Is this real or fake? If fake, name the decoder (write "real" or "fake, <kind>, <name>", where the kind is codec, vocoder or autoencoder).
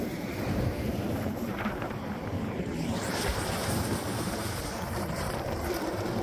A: fake, vocoder, BigVGAN v2